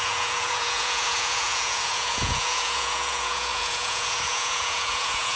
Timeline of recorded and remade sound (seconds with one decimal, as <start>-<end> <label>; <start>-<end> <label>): 0.0-5.4 remade